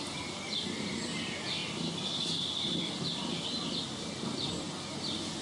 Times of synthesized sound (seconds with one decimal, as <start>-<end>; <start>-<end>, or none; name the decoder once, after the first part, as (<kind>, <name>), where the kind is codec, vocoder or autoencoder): none